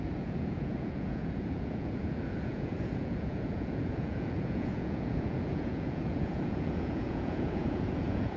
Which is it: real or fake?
fake